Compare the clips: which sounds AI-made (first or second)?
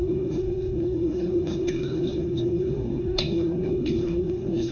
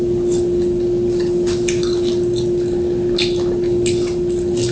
first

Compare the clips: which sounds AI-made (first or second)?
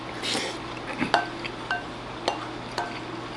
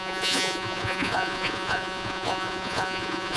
second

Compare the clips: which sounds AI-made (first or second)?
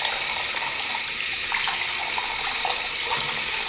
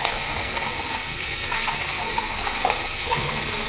second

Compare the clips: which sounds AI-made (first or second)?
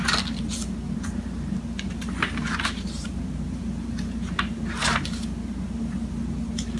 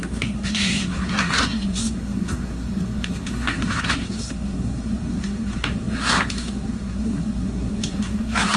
second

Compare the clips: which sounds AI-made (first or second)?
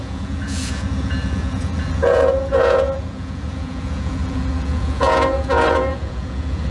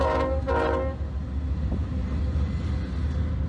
first